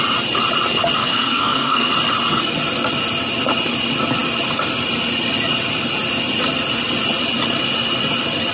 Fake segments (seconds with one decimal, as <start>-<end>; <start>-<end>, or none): 1.0-1.9